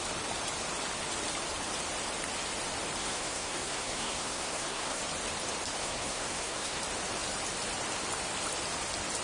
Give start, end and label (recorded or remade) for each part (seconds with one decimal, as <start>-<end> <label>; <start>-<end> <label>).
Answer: 0.0-3.0 recorded; 3.0-5.0 remade; 5.0-5.8 recorded; 5.8-6.8 remade; 6.8-9.2 recorded